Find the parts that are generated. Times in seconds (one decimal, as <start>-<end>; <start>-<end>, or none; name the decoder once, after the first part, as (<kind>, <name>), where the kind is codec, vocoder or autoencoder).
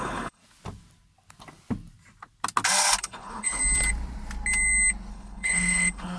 0.0-0.4 (codec, HILCodec); 3.0-3.6; 5.1-6.2